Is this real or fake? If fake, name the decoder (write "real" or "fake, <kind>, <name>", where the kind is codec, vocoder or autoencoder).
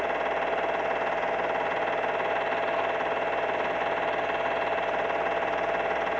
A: real